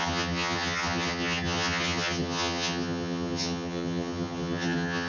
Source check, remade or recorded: remade